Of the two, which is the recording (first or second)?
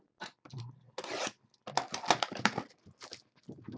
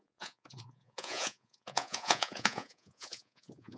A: first